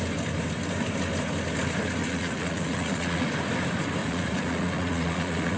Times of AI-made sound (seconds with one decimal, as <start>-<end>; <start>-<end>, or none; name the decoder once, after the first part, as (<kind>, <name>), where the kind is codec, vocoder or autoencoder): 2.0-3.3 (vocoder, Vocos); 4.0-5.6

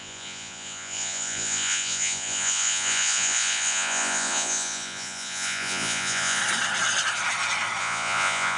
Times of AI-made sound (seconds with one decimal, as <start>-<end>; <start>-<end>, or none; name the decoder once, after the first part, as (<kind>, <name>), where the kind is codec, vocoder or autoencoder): 0.0-6.4 (vocoder, Vocos); 7.8-8.6

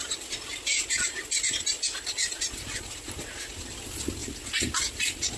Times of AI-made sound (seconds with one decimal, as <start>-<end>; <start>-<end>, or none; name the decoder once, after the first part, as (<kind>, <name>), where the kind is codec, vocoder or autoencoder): none

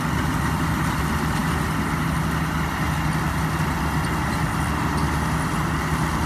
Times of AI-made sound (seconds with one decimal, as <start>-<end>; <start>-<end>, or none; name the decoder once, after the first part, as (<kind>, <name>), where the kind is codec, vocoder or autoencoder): none

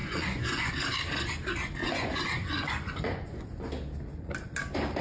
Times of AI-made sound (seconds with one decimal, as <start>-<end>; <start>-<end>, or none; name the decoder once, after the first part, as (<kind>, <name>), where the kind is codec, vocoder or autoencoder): 0.0-0.7 (vocoder, Vocos); 1.8-3.7